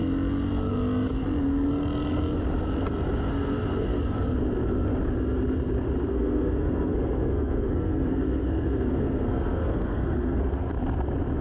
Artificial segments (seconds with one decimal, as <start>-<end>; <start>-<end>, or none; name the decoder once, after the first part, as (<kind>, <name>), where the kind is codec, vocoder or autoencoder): 3.3-4.0 (codec, SNAC); 6.1-10.7